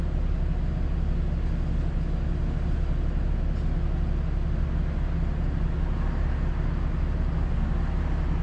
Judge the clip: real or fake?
real